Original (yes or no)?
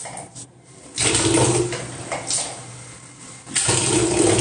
yes